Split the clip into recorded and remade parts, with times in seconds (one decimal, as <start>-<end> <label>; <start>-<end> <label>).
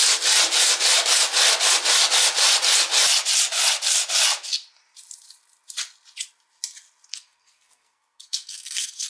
0.0-7.1 recorded; 7.1-9.1 remade